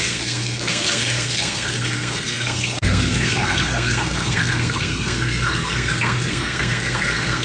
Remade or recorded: remade